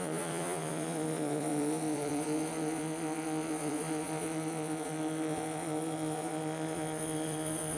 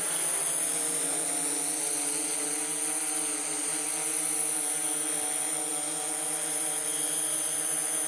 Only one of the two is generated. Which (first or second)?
first